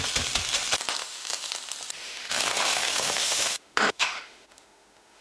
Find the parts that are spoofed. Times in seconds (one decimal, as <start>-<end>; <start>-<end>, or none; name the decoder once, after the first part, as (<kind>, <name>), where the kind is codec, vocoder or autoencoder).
1.0-1.5 (autoencoder, DAC-VAE); 2.0-5.2